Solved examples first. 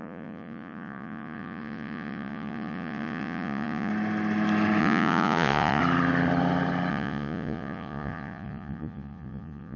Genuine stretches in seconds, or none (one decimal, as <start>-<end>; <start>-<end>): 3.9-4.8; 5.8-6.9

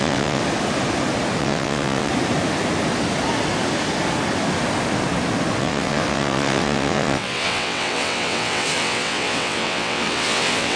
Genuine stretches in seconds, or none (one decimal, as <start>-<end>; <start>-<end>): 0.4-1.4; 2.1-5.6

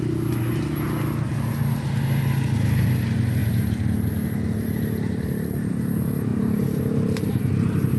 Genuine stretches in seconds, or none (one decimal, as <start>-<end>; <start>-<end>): 0.0-3.4; 5.7-6.3; 7.4-8.0

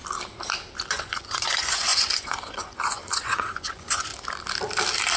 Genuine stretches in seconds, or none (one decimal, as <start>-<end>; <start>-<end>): 0.0-0.9; 4.1-5.2

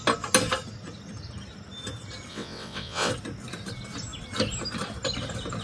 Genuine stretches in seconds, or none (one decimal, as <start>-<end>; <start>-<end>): 0.0-2.3; 3.1-5.6

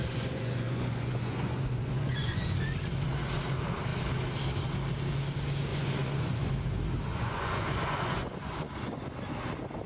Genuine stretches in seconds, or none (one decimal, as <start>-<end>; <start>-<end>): 2.5-5.7; 6.5-7.1; 9.0-9.9

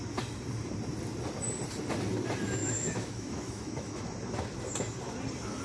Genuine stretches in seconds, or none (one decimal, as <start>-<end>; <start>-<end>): 0.0-2.6; 4.1-5.6